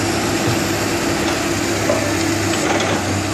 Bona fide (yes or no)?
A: yes